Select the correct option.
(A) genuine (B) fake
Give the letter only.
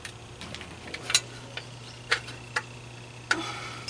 A